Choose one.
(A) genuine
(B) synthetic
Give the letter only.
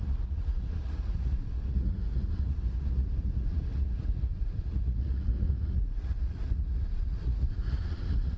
B